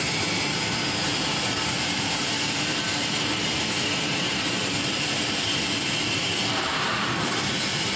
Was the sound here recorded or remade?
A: remade